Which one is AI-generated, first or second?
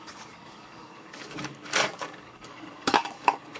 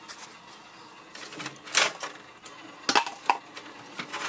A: first